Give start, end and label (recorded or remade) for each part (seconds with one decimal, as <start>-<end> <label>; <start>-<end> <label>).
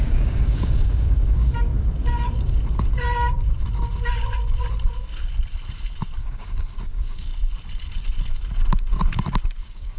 0.0-1.7 remade; 1.7-6.2 recorded; 6.2-7.3 remade; 7.3-9.6 recorded; 9.6-10.0 remade